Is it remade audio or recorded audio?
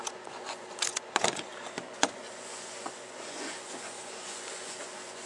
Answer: remade